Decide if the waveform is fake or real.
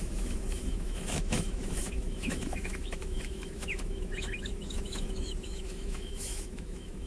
fake